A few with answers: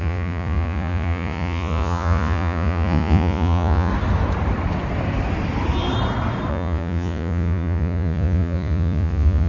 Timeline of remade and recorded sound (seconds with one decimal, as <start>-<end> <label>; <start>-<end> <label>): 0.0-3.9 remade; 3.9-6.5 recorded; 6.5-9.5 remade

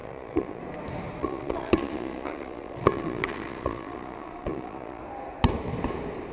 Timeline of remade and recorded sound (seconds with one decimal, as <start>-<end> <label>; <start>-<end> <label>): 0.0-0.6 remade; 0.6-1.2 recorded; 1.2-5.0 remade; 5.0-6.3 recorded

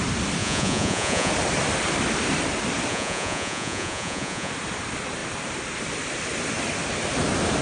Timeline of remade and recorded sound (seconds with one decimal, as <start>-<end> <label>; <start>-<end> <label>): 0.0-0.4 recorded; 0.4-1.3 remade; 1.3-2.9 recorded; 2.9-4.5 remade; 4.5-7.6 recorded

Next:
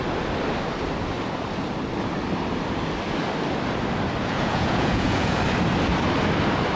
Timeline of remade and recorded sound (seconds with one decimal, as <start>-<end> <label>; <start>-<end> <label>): 0.0-4.2 recorded; 4.2-5.4 remade; 5.4-6.8 recorded